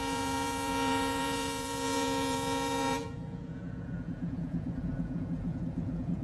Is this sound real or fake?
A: fake